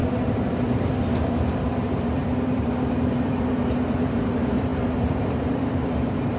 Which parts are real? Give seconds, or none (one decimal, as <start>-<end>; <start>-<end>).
none